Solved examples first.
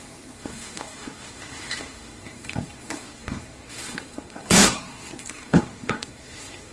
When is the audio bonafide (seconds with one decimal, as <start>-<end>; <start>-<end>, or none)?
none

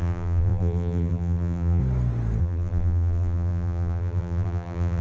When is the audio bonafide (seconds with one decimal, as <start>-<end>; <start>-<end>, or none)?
1.8-2.4

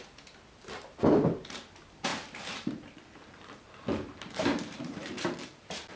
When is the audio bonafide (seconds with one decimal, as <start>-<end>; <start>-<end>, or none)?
0.0-2.1

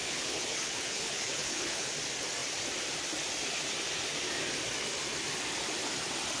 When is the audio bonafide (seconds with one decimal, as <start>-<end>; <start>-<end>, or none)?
1.9-6.4

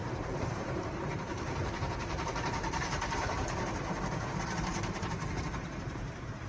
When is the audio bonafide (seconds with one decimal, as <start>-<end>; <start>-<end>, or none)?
none

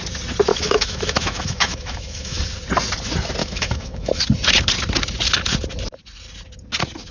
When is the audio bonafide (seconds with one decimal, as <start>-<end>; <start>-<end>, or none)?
0.0-0.5; 2.4-3.4; 4.2-7.1

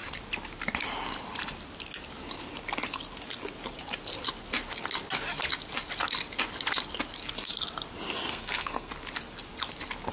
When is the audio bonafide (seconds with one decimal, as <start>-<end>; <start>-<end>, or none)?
0.0-8.3; 8.9-10.1